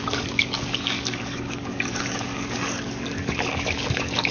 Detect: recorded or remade remade